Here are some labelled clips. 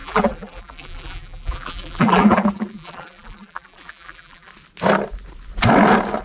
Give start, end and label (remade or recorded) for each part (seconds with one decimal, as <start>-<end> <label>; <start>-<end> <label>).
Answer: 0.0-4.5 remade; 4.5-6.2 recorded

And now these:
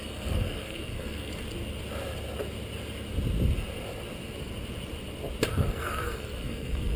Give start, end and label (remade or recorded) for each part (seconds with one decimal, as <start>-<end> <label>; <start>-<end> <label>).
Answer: 0.0-1.3 remade; 1.3-5.5 recorded; 5.5-7.0 remade

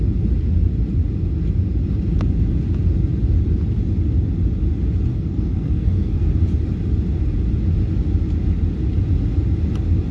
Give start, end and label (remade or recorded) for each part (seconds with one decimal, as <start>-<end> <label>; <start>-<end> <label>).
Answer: 0.0-5.1 recorded; 5.1-6.4 remade; 6.4-10.1 recorded

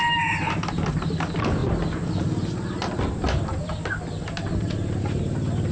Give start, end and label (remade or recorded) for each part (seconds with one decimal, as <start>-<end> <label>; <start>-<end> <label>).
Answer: 0.0-5.7 recorded

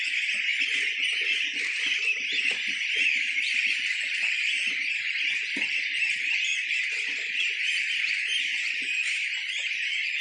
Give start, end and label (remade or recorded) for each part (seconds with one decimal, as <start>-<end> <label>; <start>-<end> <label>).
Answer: 0.0-0.5 remade; 0.5-1.1 recorded; 1.1-10.2 remade

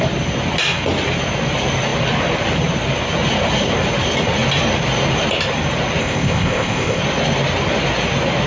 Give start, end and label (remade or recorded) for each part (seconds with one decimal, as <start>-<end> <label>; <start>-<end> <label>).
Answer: 0.0-6.0 recorded; 6.0-7.0 remade; 7.0-8.5 recorded